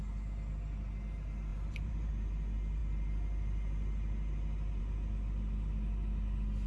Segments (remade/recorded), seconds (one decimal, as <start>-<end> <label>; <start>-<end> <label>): 0.0-1.5 recorded; 1.5-2.1 remade; 2.1-6.7 recorded